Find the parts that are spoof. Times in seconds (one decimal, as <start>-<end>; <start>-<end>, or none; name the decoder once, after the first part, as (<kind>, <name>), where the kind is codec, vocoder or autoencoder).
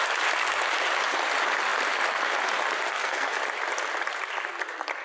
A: 2.9-3.4 (codec, SNAC)